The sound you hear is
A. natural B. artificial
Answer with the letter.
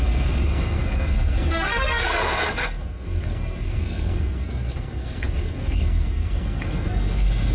B